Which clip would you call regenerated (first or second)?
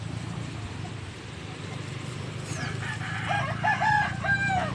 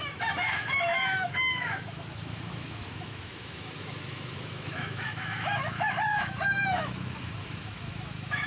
second